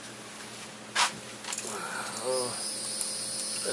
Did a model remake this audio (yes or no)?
no